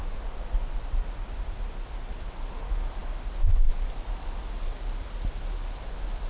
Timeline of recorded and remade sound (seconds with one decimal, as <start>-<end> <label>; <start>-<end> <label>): 0.0-6.3 recorded